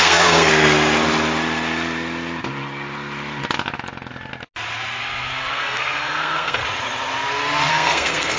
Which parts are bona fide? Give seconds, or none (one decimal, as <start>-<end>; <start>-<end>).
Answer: 0.5-5.5; 6.6-7.7